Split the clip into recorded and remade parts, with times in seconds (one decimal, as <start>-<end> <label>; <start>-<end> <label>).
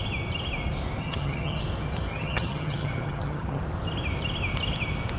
0.0-1.0 recorded; 1.0-1.6 remade; 1.6-2.1 recorded; 2.1-3.6 remade; 3.6-5.2 recorded